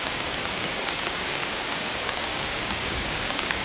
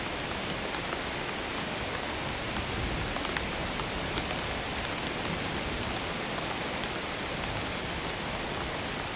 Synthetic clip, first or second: first